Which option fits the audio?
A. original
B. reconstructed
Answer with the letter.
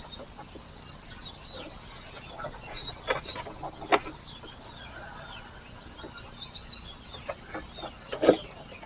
A